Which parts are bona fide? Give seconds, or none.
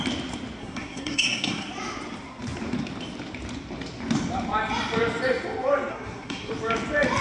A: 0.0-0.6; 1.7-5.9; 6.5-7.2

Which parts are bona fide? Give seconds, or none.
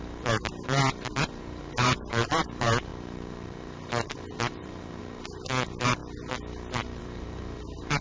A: 6.0-7.0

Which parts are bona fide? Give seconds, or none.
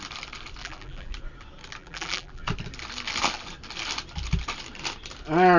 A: 0.0-0.6; 1.1-1.8; 2.4-5.6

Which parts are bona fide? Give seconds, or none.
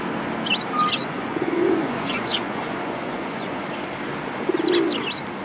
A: 0.0-1.0; 3.6-5.4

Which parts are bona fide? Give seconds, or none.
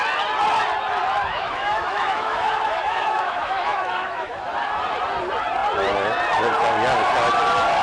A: 0.0-1.3; 4.5-7.8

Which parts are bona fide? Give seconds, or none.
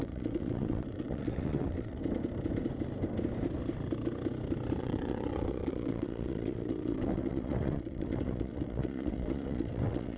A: 2.0-4.8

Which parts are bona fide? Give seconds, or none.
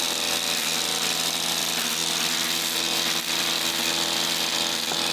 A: 0.0-5.1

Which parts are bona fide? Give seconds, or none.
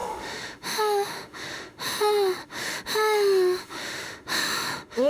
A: 2.0-2.4